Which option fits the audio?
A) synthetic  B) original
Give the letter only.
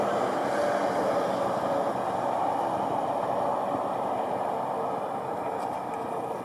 B